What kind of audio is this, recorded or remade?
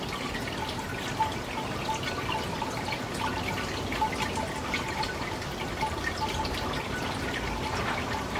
recorded